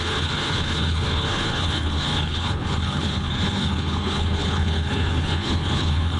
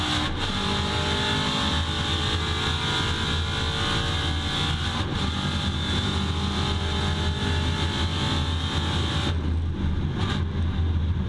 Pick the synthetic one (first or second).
first